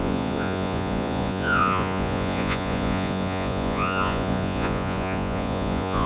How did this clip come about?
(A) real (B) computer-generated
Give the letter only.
B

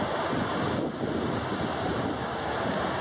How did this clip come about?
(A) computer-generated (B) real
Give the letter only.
B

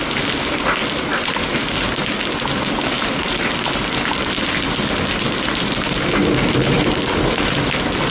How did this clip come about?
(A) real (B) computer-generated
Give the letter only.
A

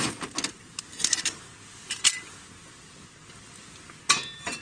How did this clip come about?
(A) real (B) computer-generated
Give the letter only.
A